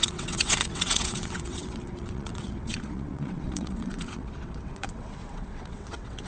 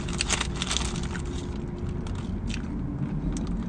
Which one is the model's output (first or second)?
first